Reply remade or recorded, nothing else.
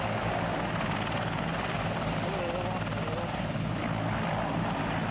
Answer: recorded